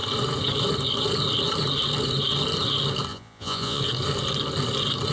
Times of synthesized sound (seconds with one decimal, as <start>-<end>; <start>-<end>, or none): 3.1-3.8